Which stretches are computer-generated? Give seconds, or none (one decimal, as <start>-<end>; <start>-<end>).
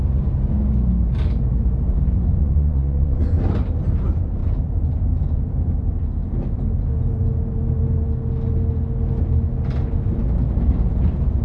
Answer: 2.3-3.3